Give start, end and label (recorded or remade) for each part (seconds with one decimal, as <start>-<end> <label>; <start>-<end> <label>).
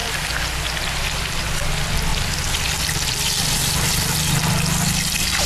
0.0-5.5 recorded